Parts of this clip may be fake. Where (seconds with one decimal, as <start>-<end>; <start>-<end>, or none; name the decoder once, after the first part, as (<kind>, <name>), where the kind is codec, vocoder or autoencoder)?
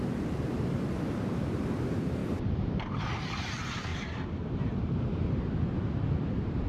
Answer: 2.2-3.0 (vocoder, BigVGAN v2); 3.9-5.4